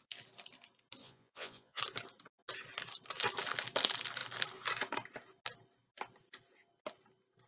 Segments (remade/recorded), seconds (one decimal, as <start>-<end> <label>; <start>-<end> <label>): 0.0-1.0 recorded; 1.0-1.8 remade; 1.8-7.5 recorded